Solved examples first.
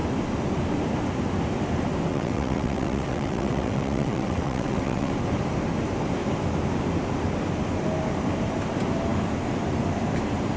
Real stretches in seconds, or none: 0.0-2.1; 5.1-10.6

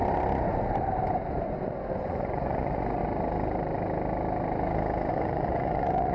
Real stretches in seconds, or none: 0.0-1.4; 3.0-5.1

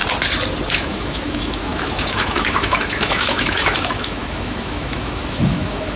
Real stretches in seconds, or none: 0.0-0.7

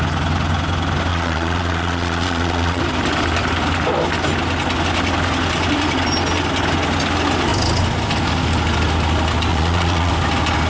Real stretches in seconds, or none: 0.0-1.1; 2.8-9.5; 10.1-10.7

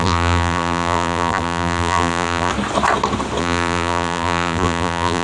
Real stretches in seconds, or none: 2.5-3.4

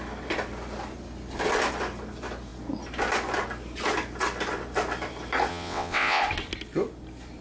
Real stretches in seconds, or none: 0.0-5.5; 6.2-7.4

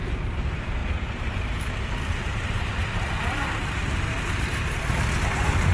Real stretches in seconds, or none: none

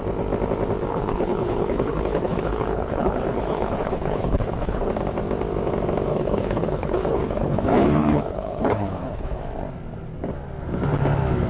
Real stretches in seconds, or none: 0.0-0.9; 4.9-6.1; 9.4-11.5